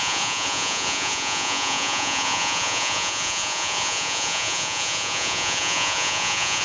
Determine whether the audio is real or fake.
fake